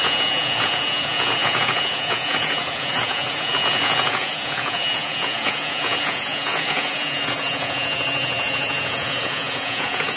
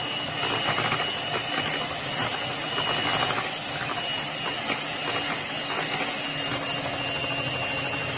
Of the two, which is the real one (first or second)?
second